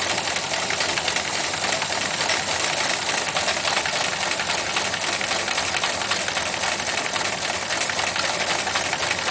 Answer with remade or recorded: recorded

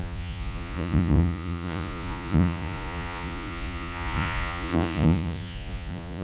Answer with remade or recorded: remade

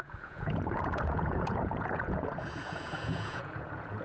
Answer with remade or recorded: remade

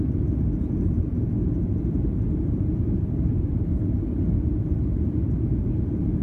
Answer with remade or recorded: recorded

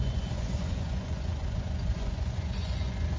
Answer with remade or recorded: remade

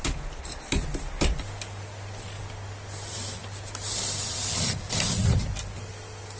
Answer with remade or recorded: recorded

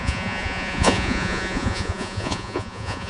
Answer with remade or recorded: remade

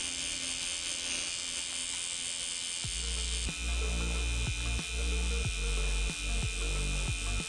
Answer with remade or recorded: recorded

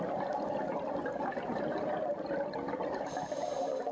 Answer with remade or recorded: recorded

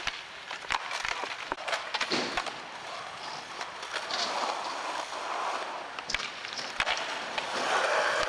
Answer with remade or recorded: recorded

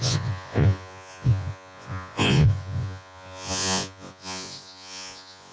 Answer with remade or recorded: remade